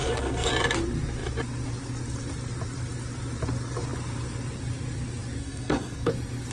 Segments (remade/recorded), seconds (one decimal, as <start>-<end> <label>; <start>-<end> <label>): 0.0-0.5 remade; 0.5-5.4 recorded; 5.4-6.1 remade; 6.1-6.5 recorded